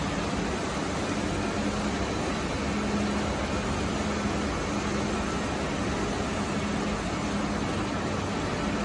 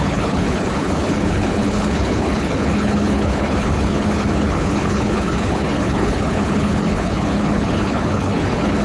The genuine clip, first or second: first